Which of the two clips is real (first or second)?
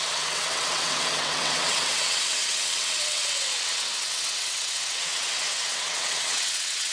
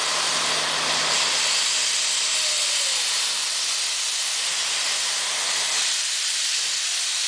second